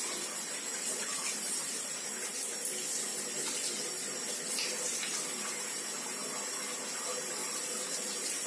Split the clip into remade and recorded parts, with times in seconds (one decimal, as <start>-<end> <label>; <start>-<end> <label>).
0.0-0.7 recorded; 0.7-1.9 remade; 1.9-7.4 recorded; 7.4-8.5 remade